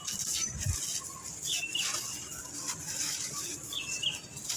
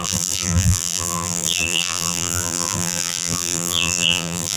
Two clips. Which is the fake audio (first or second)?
second